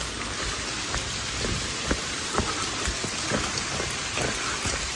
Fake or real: real